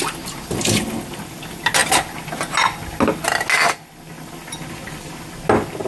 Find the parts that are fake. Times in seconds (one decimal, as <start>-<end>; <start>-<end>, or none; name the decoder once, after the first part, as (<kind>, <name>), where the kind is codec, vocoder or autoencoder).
none